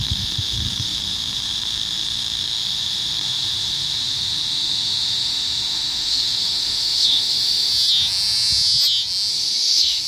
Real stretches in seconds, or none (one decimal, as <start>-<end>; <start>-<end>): 7.7-9.3